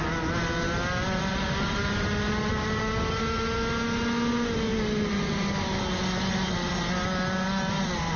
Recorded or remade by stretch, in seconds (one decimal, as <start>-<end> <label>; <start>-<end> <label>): 0.0-8.2 recorded